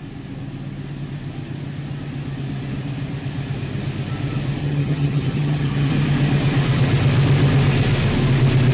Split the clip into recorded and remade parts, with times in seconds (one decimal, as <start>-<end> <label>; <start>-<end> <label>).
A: 0.0-4.6 recorded; 4.6-5.9 remade; 5.9-8.7 recorded